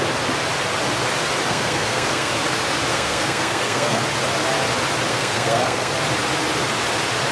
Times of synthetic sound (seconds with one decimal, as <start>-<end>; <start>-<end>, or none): 1.5-2.3; 2.9-4.0; 5.1-5.9